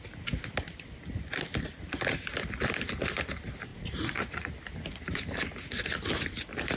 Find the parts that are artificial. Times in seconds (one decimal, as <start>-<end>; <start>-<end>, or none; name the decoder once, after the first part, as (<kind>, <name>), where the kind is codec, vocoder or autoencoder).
3.7-4.5 (vocoder, Vocos)